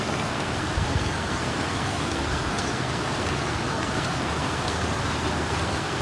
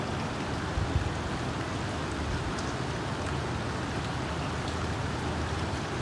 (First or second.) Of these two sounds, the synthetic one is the first